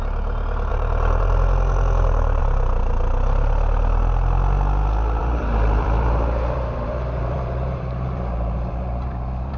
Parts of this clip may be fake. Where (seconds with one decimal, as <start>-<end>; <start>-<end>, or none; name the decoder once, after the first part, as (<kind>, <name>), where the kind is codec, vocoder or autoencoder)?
0.7-2.4 (vocoder, BigVGAN v2); 5.2-9.6